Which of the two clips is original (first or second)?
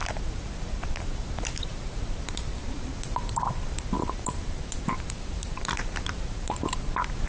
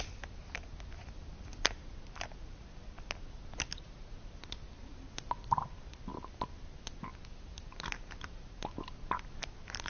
second